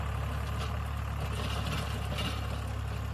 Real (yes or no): yes